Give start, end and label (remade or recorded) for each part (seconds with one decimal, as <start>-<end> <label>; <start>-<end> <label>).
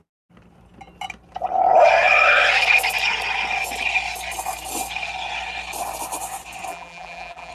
0.0-6.7 recorded; 6.7-7.5 remade